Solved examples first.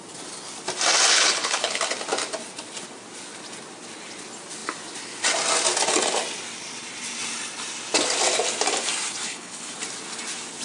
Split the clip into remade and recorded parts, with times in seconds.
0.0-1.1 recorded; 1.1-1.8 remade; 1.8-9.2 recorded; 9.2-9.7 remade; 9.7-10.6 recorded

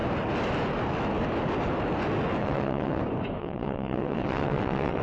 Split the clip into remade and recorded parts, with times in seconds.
0.0-2.4 recorded; 2.4-3.0 remade; 3.0-3.4 recorded; 3.4-5.0 remade